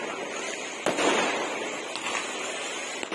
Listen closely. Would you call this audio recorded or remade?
recorded